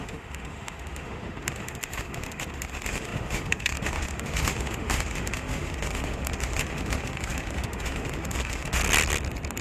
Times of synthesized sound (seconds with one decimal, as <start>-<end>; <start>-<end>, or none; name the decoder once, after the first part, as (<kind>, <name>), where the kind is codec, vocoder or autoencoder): 0.0-8.8 (autoencoder, DAC-VAE)